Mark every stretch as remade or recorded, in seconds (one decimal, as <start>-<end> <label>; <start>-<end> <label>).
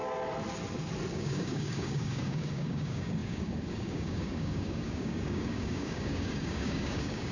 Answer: 0.0-1.1 recorded; 1.1-7.3 remade